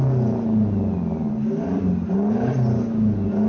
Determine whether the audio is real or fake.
real